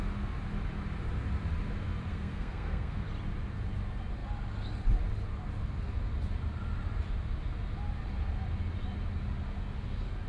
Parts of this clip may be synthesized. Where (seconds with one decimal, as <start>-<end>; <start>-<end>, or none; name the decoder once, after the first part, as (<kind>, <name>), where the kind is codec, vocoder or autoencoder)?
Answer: 2.1-3.0 (codec, SNAC)